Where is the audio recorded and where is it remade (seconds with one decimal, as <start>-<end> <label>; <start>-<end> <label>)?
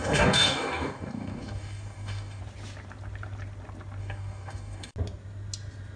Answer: 0.0-2.4 remade; 2.4-4.0 recorded; 4.0-4.9 remade; 4.9-6.0 recorded